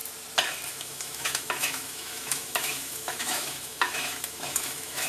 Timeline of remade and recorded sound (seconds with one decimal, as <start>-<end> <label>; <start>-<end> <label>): 0.0-0.7 recorded; 0.7-5.1 remade